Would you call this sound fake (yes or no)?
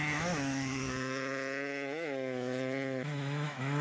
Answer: yes